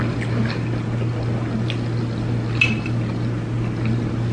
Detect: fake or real real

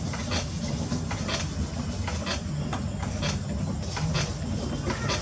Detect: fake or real real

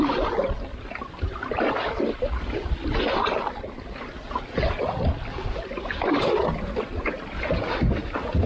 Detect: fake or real real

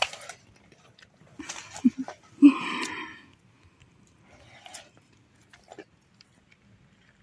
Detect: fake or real real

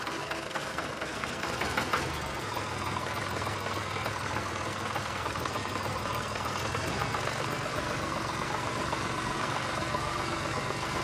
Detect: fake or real fake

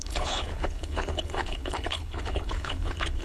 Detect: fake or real fake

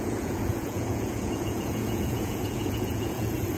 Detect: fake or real fake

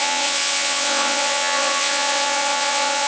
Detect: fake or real fake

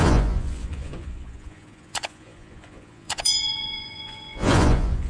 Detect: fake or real fake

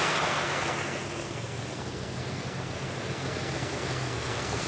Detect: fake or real fake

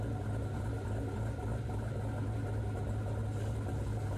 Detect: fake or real real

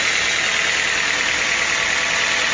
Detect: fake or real real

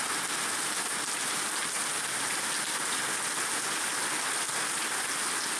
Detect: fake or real real